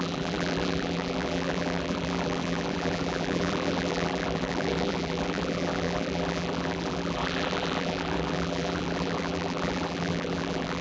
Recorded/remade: remade